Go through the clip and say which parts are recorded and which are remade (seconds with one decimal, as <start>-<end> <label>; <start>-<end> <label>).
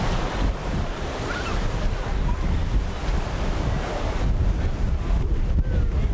0.0-1.5 remade; 1.5-5.2 recorded; 5.2-6.1 remade